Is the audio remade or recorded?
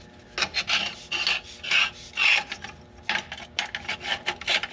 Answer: recorded